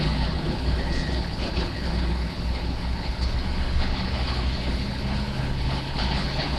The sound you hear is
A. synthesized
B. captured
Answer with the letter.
A